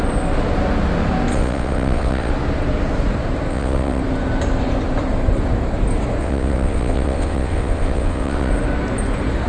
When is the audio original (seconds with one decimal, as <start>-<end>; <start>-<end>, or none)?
0.0-1.3; 2.3-3.5; 4.0-6.2; 8.5-9.5